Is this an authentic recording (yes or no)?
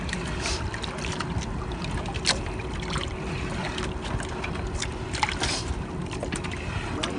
yes